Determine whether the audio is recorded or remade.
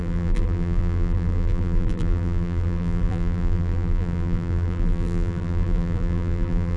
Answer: remade